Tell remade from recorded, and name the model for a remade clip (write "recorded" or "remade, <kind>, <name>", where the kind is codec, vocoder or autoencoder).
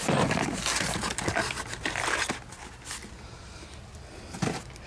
recorded